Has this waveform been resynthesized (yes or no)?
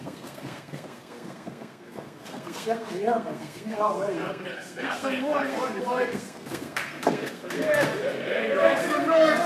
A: yes